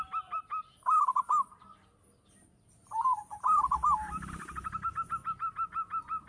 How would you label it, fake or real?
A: real